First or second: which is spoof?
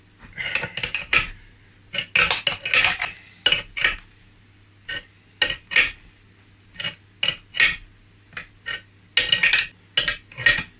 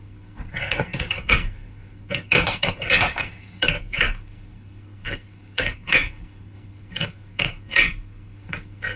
second